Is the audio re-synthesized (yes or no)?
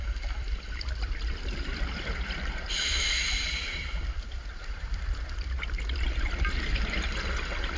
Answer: yes